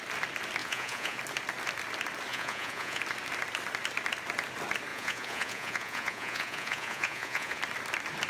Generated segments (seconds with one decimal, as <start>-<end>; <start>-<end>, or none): 0.6-1.2; 2.3-3.0; 4.9-7.6